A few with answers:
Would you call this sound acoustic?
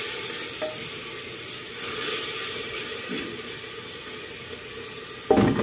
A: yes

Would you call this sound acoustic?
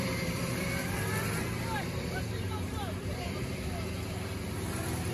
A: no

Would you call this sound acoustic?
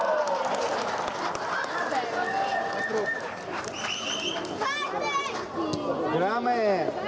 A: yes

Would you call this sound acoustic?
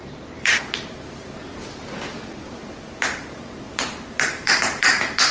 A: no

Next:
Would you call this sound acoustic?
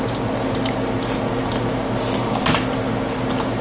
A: yes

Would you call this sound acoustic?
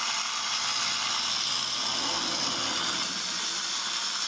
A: yes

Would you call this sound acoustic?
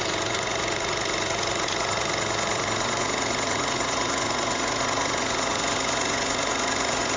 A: no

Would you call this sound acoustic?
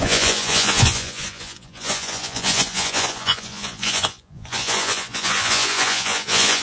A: no